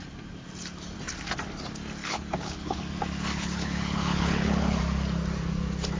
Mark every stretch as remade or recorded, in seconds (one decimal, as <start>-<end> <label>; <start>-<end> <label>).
0.0-2.0 recorded; 2.0-2.8 remade; 2.8-3.3 recorded; 3.3-4.8 remade; 4.8-6.0 recorded